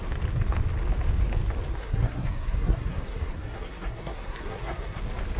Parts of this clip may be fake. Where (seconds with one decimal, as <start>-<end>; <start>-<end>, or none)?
1.8-5.0